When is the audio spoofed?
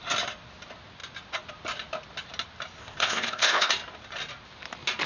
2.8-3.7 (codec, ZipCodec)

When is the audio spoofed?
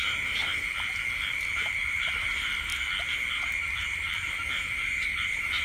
0.0-0.5 (vocoder, BigVGAN v2); 1.2-2.7; 3.3-5.6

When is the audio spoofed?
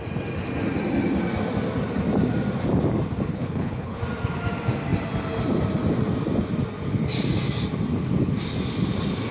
3.3-4.0 (codec, HILCodec)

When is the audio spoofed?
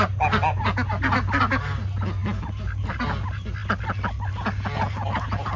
none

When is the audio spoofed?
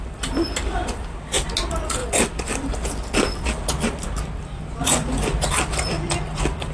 none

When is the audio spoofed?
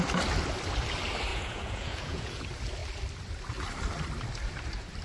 1.3-2.4 (vocoder, Vocos)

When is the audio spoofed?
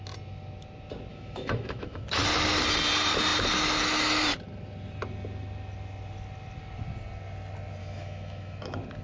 1.1-2.0 (autoencoder, DAC-VAE); 7.8-8.6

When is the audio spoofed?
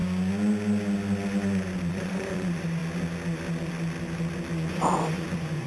1.9-2.8 (vocoder, Vocos); 4.7-5.7